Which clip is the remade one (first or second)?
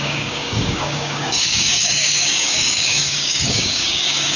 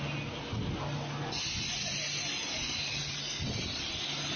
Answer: first